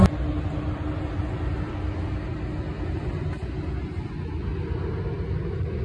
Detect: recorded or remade recorded